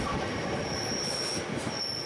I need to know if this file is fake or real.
real